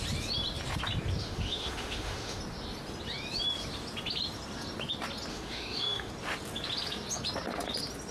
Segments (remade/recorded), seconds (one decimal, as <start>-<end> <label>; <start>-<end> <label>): 0.0-1.2 recorded; 1.2-2.4 remade; 2.4-5.3 recorded; 5.3-6.1 remade; 6.1-8.1 recorded